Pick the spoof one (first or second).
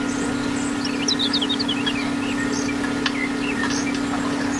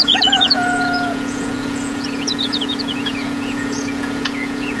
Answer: second